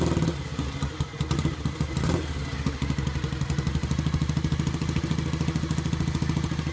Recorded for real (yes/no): yes